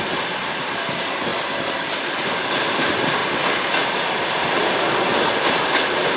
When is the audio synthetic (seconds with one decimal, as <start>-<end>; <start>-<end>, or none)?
1.3-2.2

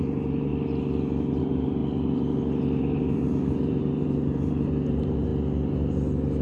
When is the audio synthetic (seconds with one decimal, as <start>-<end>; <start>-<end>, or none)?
0.0-0.5; 1.4-1.8; 2.8-5.3

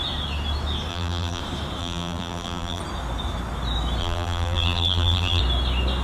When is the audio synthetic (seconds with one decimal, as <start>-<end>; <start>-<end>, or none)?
0.9-1.4; 1.8-2.8; 4.0-5.4